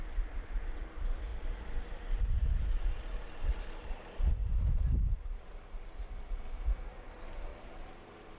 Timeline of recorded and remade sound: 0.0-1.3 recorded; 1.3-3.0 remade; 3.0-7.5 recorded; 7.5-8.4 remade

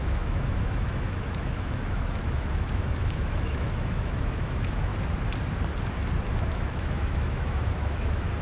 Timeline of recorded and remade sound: 0.0-4.9 remade; 4.9-6.3 recorded; 6.3-8.4 remade